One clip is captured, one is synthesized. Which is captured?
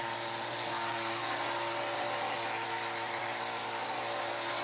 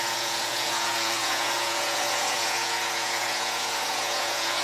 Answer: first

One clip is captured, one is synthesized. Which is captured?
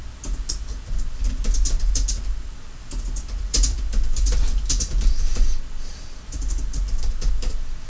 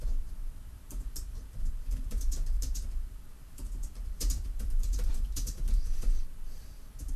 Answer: first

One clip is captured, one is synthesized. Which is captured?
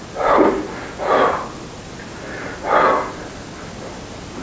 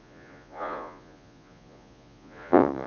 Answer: first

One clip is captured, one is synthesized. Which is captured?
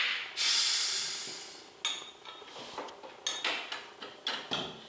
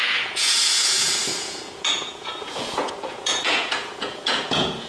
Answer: first